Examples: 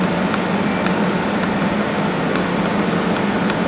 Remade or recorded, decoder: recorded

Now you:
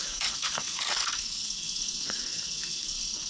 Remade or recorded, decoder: remade, codec, SNAC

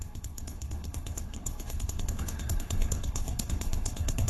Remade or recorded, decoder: remade, codec, SNAC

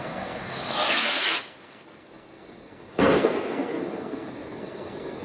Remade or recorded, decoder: remade, codec, SNAC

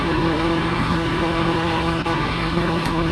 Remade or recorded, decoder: remade, codec, SNAC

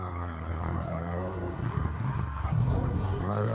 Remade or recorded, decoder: remade, codec, SNAC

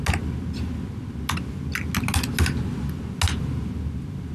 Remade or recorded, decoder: recorded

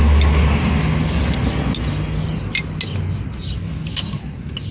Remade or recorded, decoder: recorded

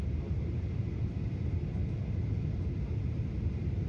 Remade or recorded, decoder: recorded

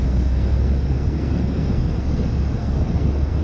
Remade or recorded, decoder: remade, codec, SNAC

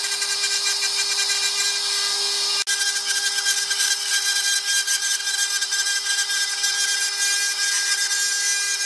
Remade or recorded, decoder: recorded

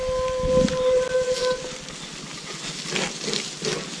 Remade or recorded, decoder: recorded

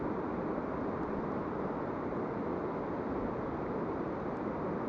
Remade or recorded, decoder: recorded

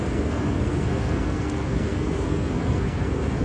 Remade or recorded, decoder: remade, codec, SNAC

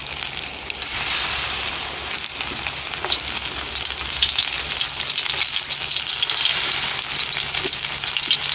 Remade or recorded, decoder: recorded